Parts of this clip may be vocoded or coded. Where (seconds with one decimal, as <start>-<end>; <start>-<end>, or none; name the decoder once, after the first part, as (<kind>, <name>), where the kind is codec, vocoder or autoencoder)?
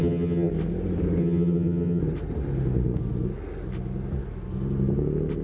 0.0-0.5 (vocoder, HiFi-GAN); 1.2-2.0